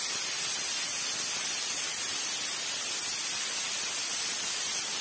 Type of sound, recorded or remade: recorded